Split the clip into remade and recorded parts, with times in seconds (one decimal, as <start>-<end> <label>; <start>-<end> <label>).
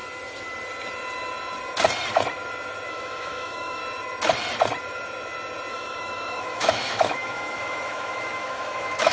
0.0-2.9 recorded; 2.9-3.8 remade; 3.8-5.7 recorded; 5.7-9.1 remade